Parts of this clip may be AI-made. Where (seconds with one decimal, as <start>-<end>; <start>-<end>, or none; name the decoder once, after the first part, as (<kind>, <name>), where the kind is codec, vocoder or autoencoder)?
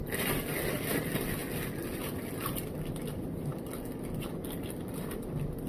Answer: none